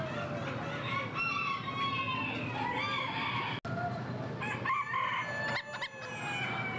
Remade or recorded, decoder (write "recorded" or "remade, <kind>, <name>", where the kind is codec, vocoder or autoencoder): recorded